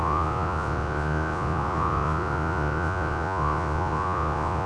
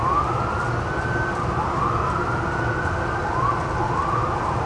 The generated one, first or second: first